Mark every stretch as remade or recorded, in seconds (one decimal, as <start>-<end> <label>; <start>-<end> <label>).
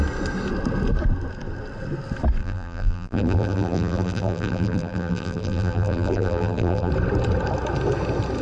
0.0-2.4 recorded; 2.4-6.9 remade; 6.9-8.4 recorded